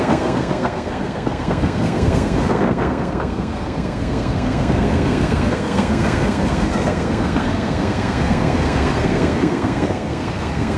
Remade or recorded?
remade